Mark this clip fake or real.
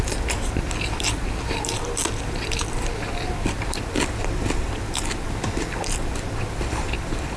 fake